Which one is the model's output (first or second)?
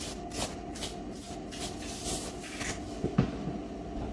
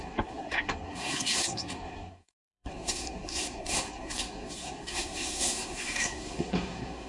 second